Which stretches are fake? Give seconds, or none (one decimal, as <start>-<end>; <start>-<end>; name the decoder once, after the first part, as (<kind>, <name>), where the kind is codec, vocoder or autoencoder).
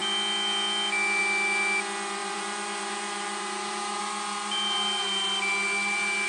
2.2-4.0 (vocoder, BigVGAN v2)